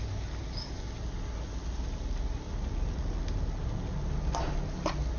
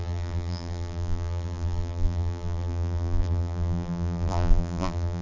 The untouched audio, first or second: first